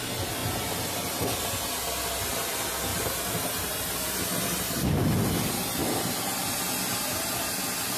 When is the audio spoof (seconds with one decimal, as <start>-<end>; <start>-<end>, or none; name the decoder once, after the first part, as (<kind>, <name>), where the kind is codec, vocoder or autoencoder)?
0.4-1.1 (vocoder, BigVGAN v2); 2.9-3.9

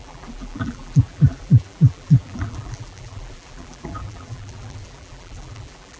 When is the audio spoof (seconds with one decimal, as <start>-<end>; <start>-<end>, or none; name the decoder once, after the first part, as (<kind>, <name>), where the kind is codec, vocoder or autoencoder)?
0.0-6.0 (vocoder, BigVGAN v2)

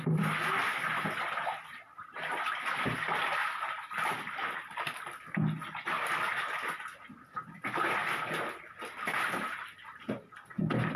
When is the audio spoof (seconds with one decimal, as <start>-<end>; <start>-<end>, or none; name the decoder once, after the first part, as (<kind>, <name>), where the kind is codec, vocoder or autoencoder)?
none